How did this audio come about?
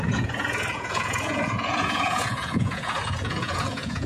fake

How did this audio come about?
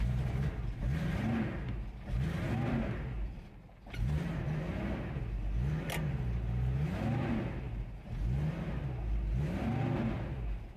real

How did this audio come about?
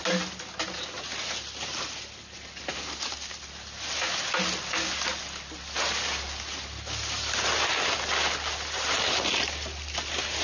real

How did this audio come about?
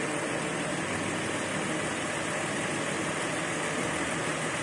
real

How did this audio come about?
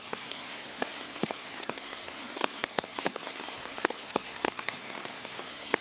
fake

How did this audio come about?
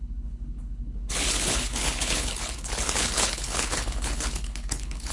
fake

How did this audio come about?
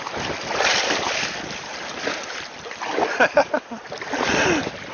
real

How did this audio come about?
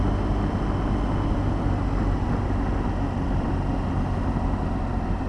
real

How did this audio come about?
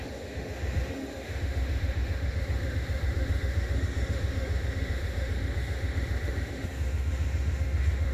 fake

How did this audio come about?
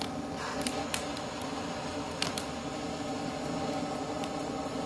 real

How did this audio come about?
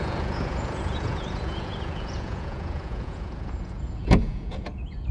fake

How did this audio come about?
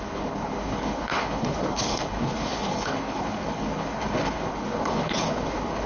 fake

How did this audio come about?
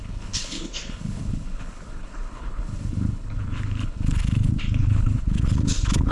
fake